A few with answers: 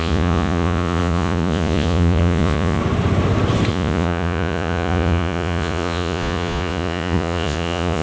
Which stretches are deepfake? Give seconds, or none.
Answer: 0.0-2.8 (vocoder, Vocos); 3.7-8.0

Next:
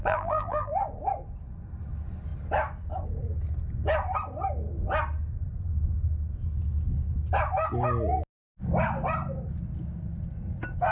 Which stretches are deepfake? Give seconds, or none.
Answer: 0.0-0.7 (vocoder, BigVGAN v2)

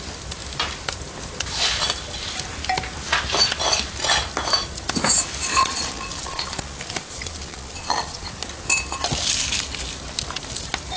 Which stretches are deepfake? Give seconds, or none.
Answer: 5.5-8.3 (vocoder, Vocos)

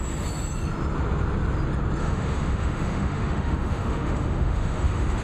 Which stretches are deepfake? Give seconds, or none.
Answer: 2.0-5.2 (autoencoder, DAC-VAE)

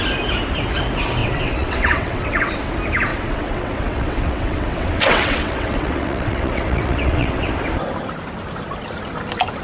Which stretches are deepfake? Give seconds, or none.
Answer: 1.2-2.7 (vocoder, WaveNeXt); 3.1-7.5